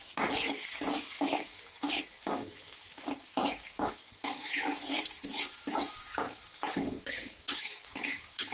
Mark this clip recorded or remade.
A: remade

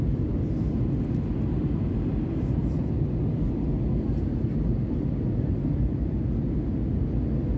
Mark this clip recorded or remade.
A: recorded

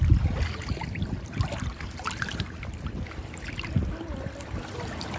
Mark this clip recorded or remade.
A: remade